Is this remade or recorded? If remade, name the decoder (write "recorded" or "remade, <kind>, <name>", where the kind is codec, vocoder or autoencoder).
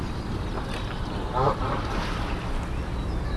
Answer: recorded